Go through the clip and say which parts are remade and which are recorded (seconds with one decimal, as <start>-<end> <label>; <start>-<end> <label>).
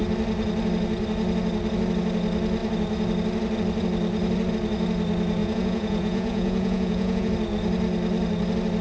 0.0-5.4 recorded; 5.4-7.3 remade; 7.3-8.8 recorded